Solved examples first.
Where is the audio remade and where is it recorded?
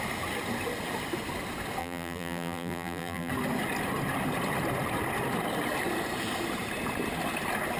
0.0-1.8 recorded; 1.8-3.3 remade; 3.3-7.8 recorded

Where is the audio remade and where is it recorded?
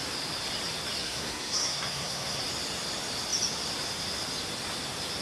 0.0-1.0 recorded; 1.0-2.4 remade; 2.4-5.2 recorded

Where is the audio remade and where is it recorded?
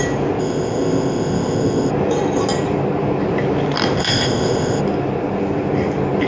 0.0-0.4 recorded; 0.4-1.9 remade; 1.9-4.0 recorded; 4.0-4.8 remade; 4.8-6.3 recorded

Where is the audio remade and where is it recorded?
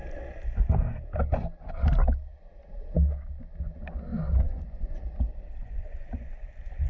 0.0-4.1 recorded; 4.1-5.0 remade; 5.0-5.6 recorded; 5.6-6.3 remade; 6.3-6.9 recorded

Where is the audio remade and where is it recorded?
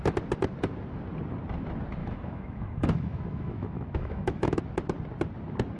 0.0-2.0 recorded; 2.0-4.6 remade; 4.6-5.8 recorded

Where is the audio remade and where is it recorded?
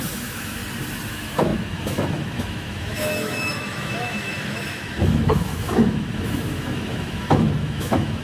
0.0-0.6 remade; 0.6-1.1 recorded; 1.1-8.2 remade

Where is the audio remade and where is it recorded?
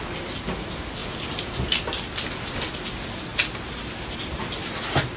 0.0-1.0 recorded; 1.0-1.6 remade; 1.6-5.2 recorded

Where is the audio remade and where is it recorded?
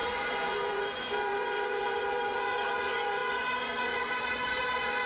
0.0-5.1 remade